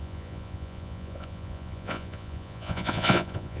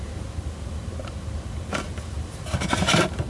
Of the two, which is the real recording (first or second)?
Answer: second